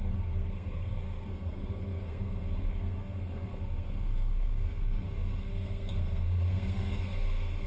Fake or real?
fake